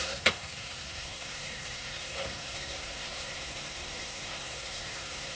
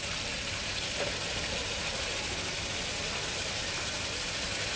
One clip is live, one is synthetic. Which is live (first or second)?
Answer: second